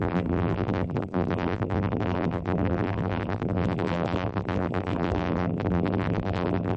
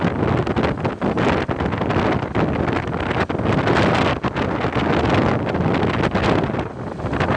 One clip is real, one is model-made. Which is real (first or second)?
second